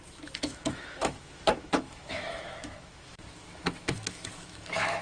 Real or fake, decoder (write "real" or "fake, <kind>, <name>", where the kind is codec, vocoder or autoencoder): fake, autoencoder, DAC-VAE